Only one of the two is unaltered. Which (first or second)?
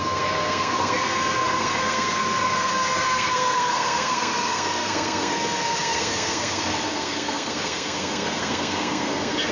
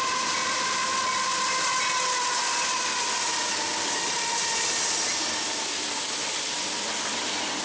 second